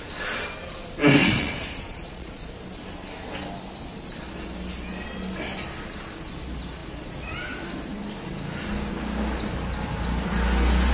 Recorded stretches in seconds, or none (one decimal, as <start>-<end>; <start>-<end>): 0.0-1.2; 2.5-10.9